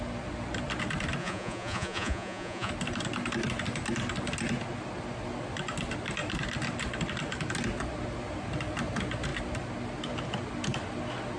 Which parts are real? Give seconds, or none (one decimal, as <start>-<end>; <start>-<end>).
0.0-1.2; 2.7-11.4